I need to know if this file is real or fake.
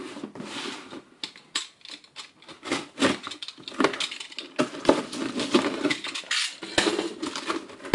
real